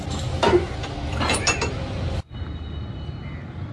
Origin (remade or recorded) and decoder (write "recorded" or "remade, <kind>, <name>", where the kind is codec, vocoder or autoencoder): recorded